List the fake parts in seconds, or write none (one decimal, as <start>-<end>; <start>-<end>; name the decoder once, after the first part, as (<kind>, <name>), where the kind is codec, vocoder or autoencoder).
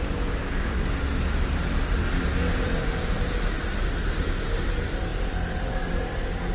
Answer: none